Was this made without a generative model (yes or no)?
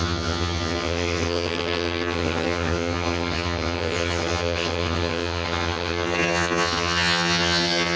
no